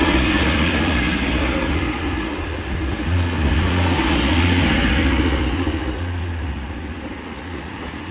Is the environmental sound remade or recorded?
remade